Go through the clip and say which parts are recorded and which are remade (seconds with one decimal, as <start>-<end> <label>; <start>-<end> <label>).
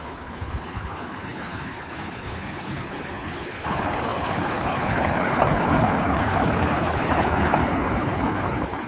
0.0-8.9 remade